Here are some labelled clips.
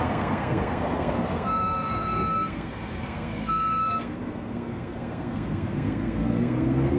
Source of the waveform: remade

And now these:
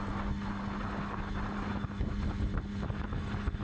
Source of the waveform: recorded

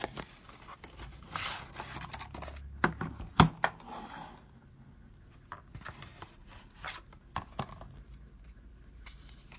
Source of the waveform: recorded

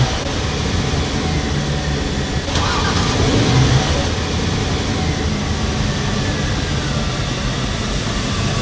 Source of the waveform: recorded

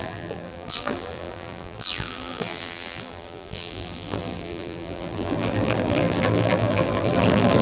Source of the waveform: remade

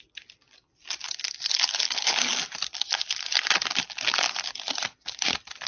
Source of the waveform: recorded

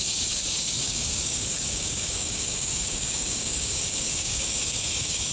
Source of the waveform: remade